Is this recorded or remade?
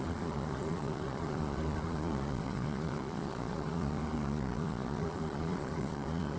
remade